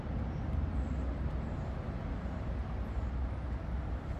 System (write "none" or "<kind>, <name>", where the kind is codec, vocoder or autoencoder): none